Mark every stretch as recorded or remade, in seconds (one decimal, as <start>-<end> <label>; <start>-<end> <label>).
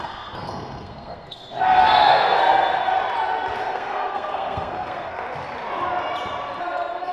0.0-2.9 remade; 2.9-3.6 recorded; 3.6-5.2 remade; 5.2-6.6 recorded; 6.6-7.1 remade